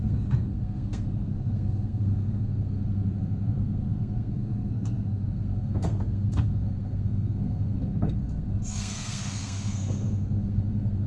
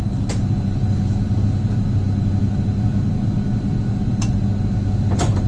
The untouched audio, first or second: second